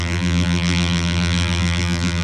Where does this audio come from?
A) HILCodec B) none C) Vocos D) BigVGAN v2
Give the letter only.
D